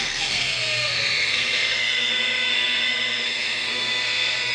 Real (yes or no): no